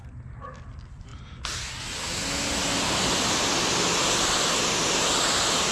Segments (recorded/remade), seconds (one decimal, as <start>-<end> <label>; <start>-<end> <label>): 0.0-5.7 recorded